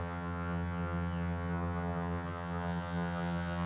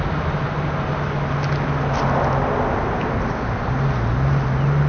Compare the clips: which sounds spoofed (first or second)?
first